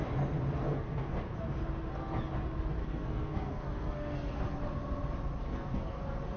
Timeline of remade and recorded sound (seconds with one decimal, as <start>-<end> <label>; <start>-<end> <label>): 0.0-0.6 recorded; 0.6-1.3 remade; 1.3-2.8 recorded; 2.8-4.3 remade; 4.3-5.4 recorded; 5.4-6.0 remade; 6.0-6.4 recorded